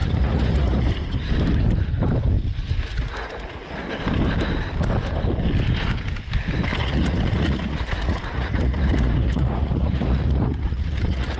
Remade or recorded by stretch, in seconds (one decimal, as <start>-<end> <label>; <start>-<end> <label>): 0.0-0.9 remade; 0.9-2.9 recorded; 2.9-3.9 remade; 3.9-6.8 recorded; 6.8-11.4 remade